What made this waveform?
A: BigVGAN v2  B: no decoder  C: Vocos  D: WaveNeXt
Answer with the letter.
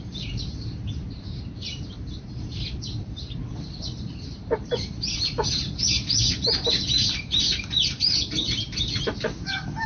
A